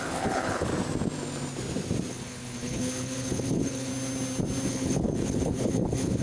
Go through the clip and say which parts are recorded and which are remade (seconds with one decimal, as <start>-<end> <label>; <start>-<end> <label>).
0.0-0.7 remade; 0.7-2.1 recorded; 2.1-3.9 remade; 3.9-4.7 recorded; 4.7-6.2 remade